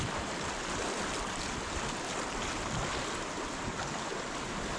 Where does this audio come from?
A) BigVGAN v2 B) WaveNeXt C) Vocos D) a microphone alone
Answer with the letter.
D